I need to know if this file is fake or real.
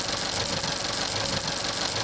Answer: fake